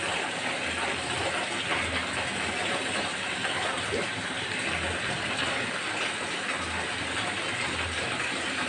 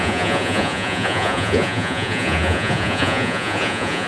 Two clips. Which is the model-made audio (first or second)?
second